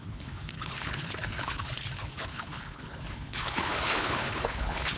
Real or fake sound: fake